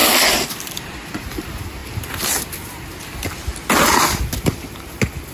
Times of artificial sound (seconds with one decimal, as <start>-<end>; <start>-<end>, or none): none